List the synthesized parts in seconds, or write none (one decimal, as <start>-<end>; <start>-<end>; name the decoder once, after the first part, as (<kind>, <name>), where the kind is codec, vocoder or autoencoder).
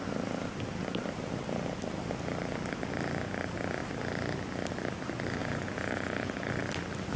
5.4-6.5 (vocoder, Vocos)